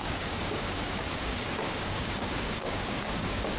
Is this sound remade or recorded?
remade